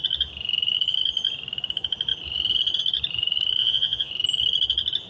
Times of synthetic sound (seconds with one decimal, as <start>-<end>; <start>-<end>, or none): 3.6-4.1